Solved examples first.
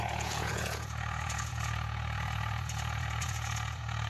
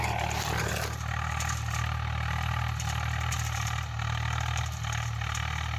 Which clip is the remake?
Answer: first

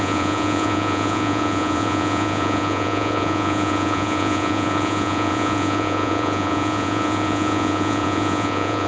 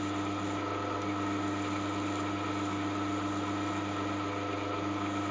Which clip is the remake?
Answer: first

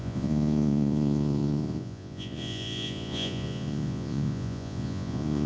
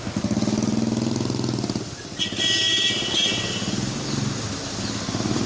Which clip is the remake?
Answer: first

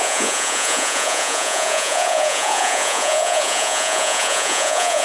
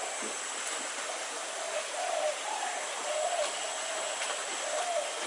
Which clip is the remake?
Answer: first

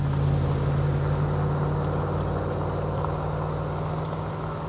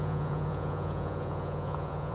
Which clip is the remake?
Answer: second